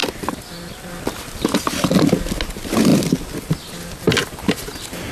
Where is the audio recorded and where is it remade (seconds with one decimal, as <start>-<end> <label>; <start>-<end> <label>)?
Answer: 0.0-5.1 recorded